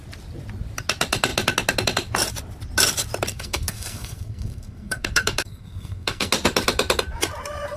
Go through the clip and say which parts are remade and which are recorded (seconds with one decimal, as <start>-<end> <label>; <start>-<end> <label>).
0.0-3.3 recorded; 3.3-6.3 remade; 6.3-7.8 recorded